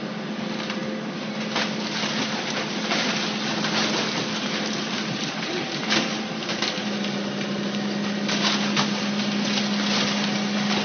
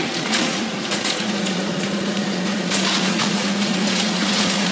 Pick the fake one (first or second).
second